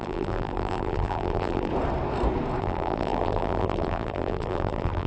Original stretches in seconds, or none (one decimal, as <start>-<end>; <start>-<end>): 1.7-2.6